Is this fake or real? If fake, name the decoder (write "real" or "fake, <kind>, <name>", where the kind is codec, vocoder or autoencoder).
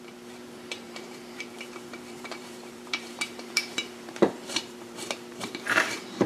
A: fake, vocoder, BigVGAN v2